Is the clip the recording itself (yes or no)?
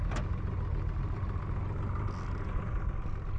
yes